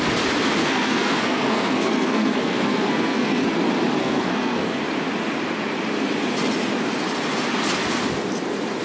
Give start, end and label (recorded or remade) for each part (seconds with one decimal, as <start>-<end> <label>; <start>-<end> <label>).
0.0-0.6 recorded; 0.6-3.6 remade; 3.6-4.0 recorded; 4.0-4.8 remade; 4.8-8.8 recorded